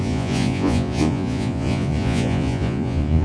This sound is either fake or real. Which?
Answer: fake